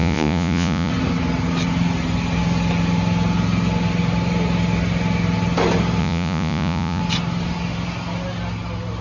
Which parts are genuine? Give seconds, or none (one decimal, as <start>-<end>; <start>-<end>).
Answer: 0.9-6.0; 7.0-9.0